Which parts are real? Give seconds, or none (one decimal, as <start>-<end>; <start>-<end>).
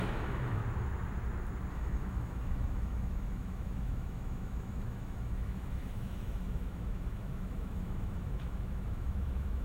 0.6-1.7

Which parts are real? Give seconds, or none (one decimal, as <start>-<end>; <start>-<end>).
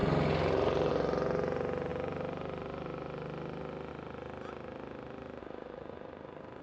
0.0-5.4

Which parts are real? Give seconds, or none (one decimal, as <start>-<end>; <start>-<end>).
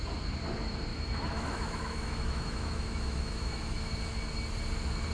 0.0-0.9; 3.9-5.1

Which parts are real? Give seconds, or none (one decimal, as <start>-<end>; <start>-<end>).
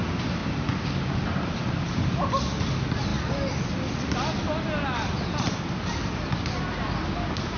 0.0-7.6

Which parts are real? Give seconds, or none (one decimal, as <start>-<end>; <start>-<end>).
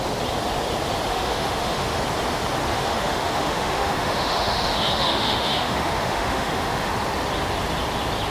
0.0-1.1; 2.0-2.7; 6.9-8.3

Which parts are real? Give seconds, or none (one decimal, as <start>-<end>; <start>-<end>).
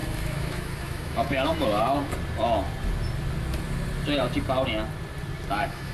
2.0-5.5